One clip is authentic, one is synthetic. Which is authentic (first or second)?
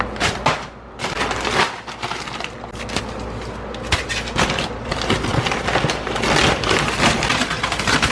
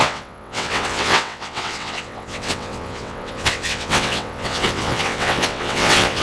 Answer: first